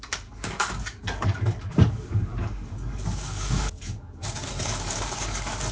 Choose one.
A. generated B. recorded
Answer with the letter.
A